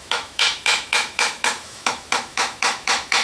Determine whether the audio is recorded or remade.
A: remade